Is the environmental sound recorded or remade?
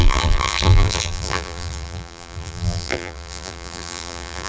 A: remade